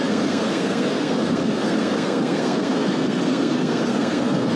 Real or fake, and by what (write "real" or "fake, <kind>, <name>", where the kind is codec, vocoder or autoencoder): fake, codec, SNAC